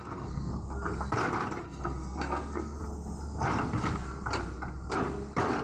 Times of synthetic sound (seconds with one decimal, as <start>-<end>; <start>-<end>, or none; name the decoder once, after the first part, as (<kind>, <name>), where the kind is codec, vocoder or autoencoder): 0.0-0.5 (codec, SNAC); 1.6-2.8